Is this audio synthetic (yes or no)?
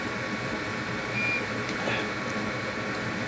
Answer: no